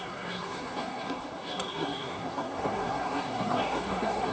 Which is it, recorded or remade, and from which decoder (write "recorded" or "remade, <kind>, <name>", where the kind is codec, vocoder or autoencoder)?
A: remade, codec, SNAC